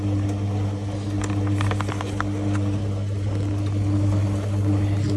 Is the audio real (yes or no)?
yes